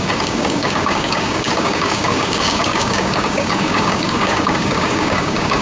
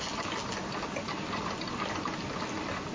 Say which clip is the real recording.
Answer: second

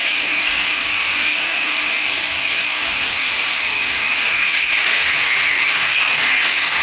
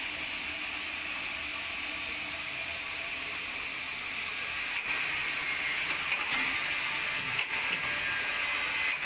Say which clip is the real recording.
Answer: second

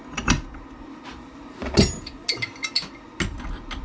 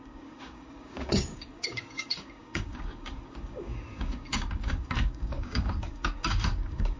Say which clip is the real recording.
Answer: first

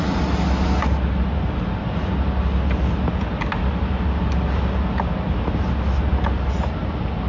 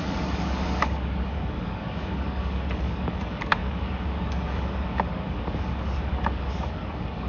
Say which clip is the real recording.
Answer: first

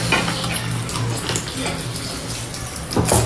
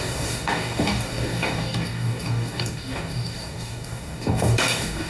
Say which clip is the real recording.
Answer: first